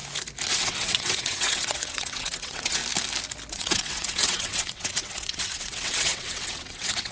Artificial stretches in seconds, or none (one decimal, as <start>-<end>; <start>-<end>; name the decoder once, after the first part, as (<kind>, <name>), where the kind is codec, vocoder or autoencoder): 0.5-2.8 (vocoder, WaveNeXt); 3.5-7.1